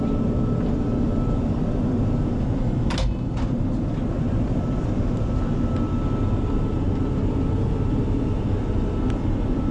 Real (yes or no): yes